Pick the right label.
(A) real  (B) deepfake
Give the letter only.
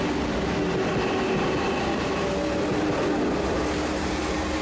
A